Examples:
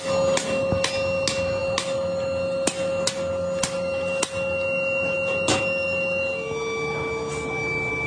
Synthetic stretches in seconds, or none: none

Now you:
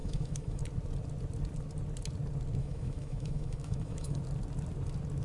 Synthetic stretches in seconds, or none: 0.0-0.6 (autoencoder, DAC-VAE); 2.6-4.2